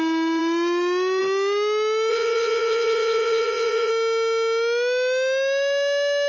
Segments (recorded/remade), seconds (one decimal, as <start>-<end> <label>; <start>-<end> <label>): 0.0-2.1 recorded; 2.1-3.9 remade; 3.9-6.3 recorded